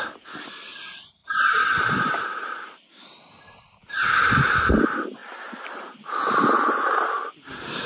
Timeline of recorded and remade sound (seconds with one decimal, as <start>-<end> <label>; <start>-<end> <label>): 0.0-1.2 recorded; 1.2-4.7 remade; 4.7-5.2 recorded; 5.2-6.8 remade; 6.8-7.9 recorded